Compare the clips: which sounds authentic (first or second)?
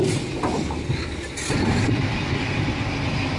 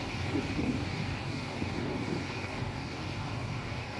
first